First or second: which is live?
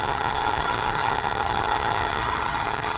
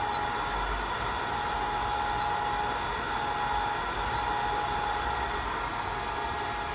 second